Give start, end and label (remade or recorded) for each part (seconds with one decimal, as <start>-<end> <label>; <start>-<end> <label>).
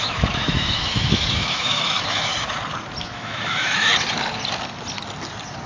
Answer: 0.0-2.3 remade; 2.3-3.0 recorded; 3.0-3.9 remade; 3.9-5.7 recorded